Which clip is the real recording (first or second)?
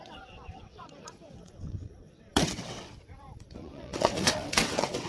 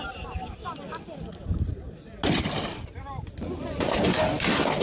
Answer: second